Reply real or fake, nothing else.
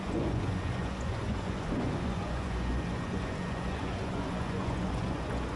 fake